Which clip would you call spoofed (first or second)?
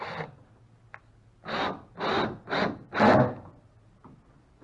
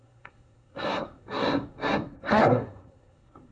second